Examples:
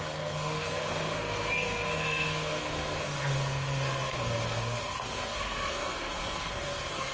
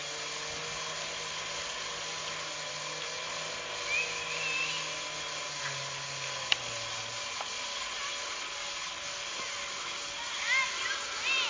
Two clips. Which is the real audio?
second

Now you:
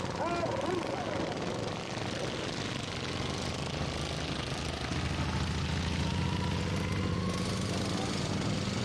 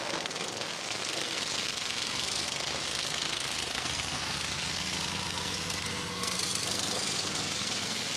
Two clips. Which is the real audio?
first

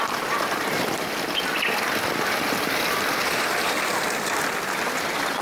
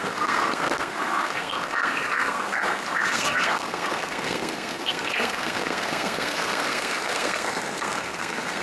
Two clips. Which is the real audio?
first